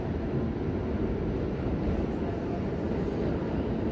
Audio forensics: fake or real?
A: real